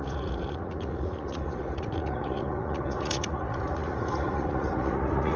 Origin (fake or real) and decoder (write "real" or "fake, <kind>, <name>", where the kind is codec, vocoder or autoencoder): fake, vocoder, Vocos